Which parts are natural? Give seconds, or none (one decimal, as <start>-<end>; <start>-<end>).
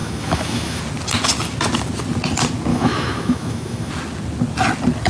0.8-2.7; 3.9-5.1